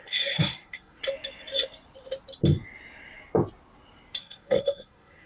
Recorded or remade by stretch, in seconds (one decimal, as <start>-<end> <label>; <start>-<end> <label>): 0.0-1.0 remade; 1.0-4.2 recorded; 4.2-5.3 remade